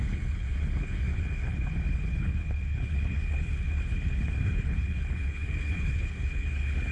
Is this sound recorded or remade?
remade